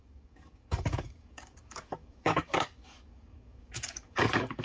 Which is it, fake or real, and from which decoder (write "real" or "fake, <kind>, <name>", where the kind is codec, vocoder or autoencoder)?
fake, codec, DAC